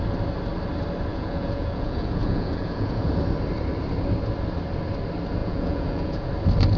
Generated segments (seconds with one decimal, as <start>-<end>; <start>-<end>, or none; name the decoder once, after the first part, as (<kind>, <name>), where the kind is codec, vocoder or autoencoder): 1.1-3.2 (vocoder, Vocos); 5.4-6.3

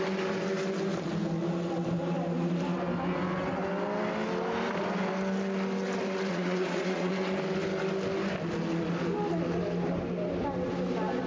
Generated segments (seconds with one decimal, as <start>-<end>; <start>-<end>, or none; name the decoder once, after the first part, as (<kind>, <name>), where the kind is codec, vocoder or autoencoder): 6.3-7.1 (vocoder, Vocos)

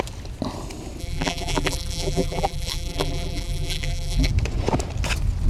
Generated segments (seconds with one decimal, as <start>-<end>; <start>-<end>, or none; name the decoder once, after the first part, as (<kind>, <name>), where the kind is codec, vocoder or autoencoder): 1.0-4.3 (vocoder, BigVGAN v2)

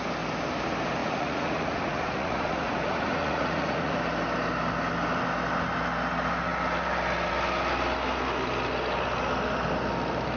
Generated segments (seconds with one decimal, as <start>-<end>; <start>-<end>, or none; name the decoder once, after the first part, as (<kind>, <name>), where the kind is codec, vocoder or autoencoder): 1.0-3.9 (vocoder, Vocos)